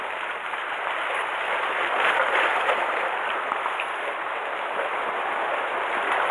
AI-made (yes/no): no